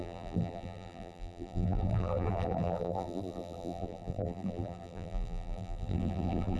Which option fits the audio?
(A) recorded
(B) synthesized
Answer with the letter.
B